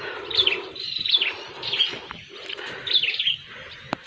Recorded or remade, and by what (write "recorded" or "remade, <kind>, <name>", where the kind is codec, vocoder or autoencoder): recorded